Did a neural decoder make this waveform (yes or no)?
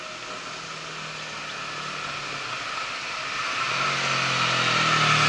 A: no